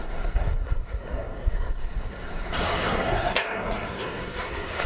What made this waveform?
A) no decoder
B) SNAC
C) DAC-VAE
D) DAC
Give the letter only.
B